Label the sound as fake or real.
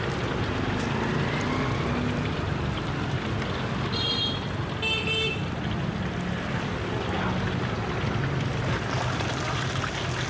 real